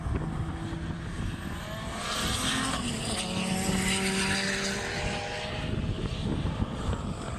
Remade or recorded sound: recorded